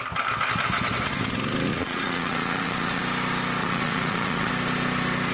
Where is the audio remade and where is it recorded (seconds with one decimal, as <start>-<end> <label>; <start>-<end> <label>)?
0.0-1.7 recorded; 1.7-3.0 remade; 3.0-3.6 recorded; 3.6-4.5 remade; 4.5-5.3 recorded